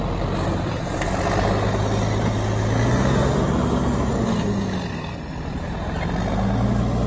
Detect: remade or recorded recorded